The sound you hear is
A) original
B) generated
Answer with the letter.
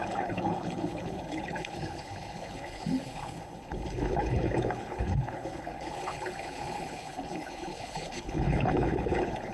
B